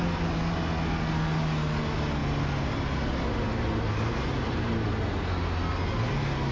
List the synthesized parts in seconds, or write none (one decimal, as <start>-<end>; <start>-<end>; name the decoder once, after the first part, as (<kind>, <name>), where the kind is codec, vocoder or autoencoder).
none